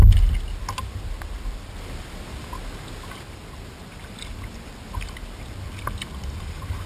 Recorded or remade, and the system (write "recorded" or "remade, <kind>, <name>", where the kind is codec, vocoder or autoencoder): recorded